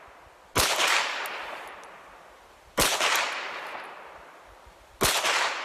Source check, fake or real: real